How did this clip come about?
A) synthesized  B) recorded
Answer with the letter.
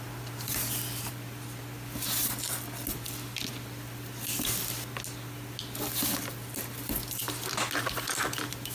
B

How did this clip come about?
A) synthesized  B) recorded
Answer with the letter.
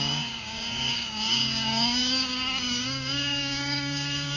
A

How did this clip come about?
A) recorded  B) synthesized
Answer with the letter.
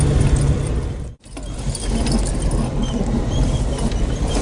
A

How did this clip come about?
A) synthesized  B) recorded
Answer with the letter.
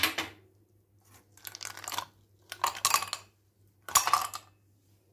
B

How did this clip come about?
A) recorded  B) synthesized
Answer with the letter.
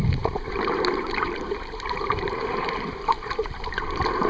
B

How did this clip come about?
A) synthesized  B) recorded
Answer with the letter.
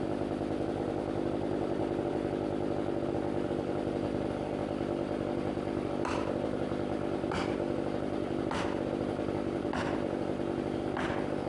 B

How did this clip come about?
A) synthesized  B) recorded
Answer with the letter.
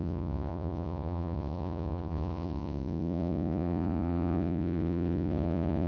A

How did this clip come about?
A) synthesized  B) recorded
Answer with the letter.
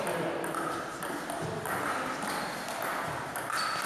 B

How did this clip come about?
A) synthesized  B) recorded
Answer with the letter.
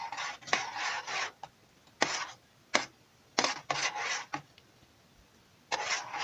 B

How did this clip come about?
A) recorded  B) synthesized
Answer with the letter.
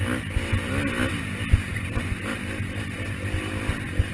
A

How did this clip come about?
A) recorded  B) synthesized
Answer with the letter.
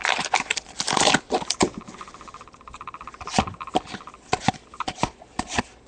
A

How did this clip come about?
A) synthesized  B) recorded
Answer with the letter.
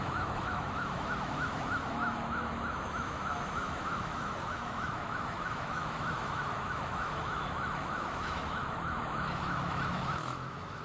A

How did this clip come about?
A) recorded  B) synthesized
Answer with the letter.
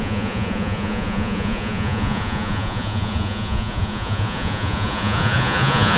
B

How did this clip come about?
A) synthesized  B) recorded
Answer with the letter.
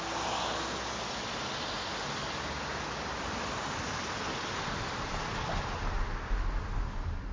B